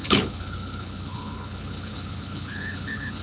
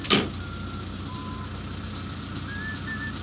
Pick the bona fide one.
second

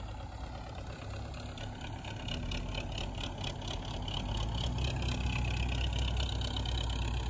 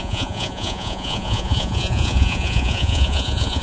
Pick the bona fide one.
first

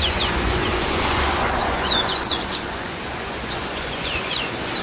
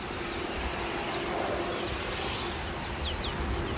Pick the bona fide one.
second